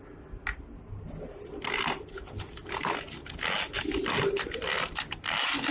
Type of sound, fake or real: real